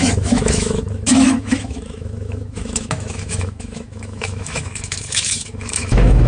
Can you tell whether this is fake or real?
fake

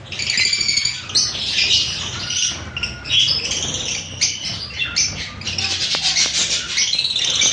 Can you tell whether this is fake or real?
real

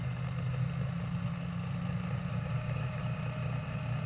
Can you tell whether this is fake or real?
real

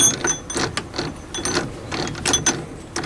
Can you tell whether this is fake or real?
real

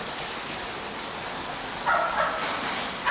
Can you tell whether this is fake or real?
real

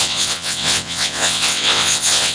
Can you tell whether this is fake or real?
fake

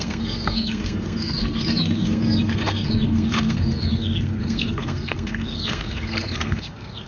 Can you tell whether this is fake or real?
fake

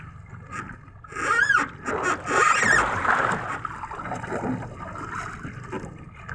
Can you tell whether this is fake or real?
real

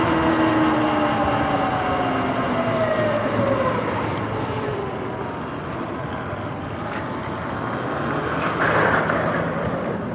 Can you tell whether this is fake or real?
real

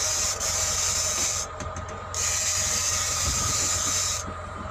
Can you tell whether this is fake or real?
fake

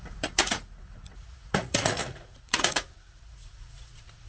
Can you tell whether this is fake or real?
fake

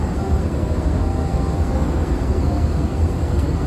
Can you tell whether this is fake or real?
fake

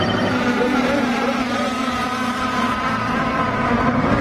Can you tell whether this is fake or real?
fake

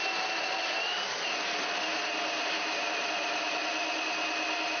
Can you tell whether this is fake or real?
real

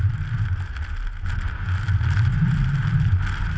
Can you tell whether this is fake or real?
real